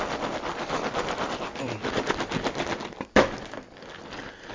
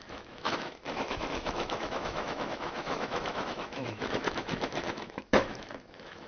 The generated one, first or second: second